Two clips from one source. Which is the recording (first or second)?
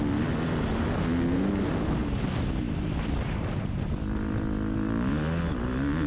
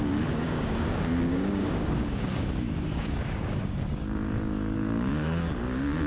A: first